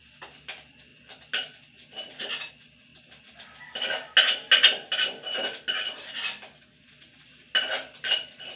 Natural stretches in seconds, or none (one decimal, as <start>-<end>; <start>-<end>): 0.0-8.6